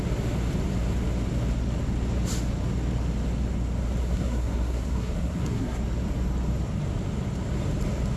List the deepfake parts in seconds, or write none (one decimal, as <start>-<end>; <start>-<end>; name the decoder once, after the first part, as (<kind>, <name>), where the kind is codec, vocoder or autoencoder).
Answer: 4.0-5.8 (codec, SNAC)